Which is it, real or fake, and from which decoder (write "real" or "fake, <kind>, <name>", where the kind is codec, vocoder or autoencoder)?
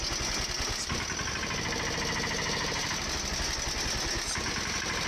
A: real